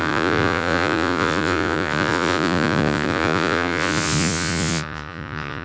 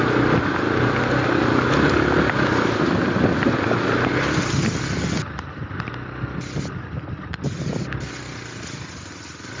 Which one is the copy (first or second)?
first